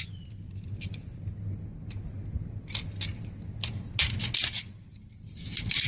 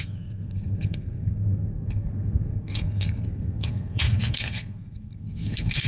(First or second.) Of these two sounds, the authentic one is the first